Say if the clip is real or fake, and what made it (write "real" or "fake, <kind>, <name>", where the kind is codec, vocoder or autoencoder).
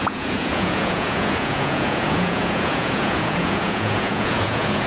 fake, vocoder, Vocos